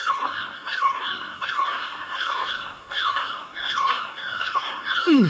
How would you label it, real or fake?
fake